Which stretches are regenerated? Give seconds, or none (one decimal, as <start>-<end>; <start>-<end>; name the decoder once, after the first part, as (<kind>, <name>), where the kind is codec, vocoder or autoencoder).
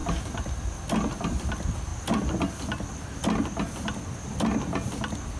none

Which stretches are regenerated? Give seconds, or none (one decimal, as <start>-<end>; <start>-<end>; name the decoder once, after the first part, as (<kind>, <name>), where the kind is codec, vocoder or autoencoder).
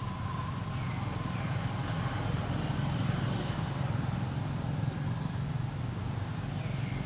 none